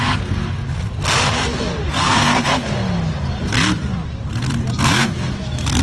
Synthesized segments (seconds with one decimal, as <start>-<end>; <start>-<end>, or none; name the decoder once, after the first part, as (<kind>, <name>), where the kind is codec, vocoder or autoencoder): 0.0-0.4 (codec, SNAC); 1.9-2.5